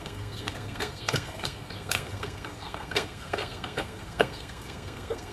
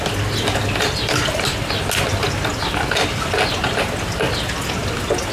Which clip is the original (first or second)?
second